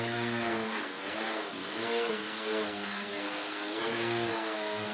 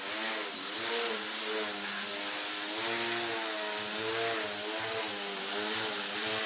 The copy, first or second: first